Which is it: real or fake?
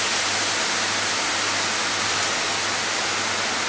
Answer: real